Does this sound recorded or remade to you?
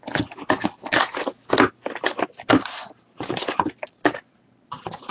recorded